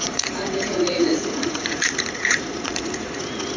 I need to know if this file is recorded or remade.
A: remade